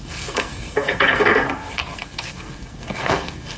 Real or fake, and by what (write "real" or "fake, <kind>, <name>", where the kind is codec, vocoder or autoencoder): fake, codec, SNAC